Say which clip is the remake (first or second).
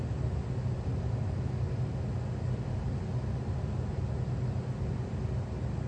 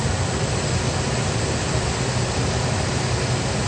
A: second